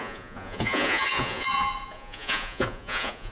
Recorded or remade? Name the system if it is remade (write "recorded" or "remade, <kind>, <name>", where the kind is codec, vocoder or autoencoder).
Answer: remade, vocoder, Vocos